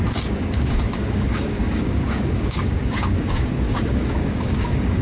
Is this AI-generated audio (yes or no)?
yes